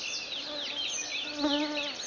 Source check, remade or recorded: recorded